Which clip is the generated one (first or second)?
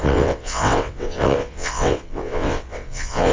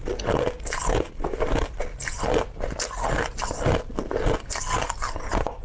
first